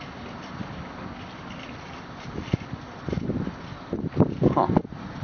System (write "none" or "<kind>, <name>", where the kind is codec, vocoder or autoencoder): none